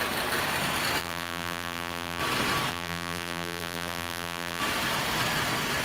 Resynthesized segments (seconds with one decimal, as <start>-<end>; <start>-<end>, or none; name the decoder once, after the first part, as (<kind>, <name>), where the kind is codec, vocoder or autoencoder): 1.0-2.2 (vocoder, BigVGAN v2); 2.7-4.6